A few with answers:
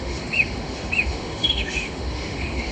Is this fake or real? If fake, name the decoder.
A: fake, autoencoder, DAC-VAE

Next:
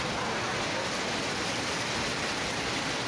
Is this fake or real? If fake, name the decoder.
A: real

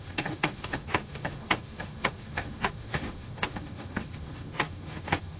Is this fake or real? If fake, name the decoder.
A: fake, autoencoder, DAC-VAE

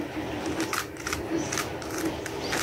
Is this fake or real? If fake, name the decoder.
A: real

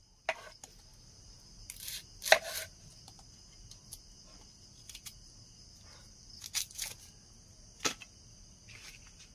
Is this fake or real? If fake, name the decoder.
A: real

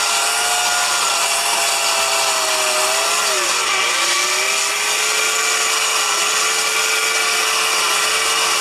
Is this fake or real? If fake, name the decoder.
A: real